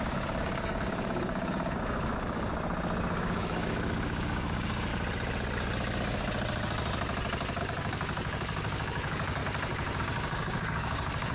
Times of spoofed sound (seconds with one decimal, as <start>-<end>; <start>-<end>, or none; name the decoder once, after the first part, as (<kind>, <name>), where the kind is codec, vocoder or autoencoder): 0.0-2.5 (codec, DAC); 3.2-4.9; 7.6-9.4; 10.0-11.3